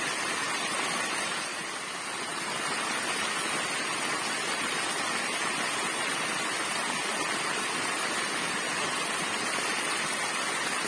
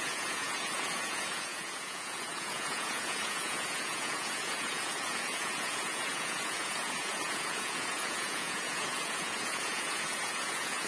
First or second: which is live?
first